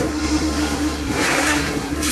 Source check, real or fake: fake